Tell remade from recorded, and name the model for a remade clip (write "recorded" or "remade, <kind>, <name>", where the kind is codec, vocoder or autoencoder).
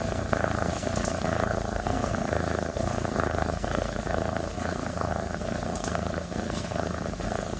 remade, codec, SNAC